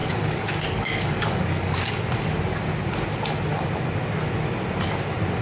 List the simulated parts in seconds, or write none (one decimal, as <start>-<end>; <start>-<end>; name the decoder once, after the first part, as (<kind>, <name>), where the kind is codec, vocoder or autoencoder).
0.0-2.0 (codec, DAC)